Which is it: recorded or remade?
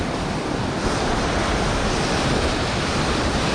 recorded